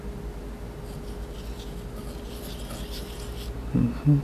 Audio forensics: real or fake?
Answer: real